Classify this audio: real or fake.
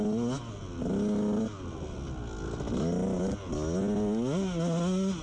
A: real